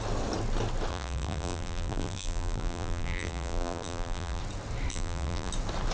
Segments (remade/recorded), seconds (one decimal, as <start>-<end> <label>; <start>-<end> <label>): 0.0-0.9 recorded; 0.9-4.4 remade; 4.4-4.9 recorded; 4.9-5.5 remade; 5.5-5.9 recorded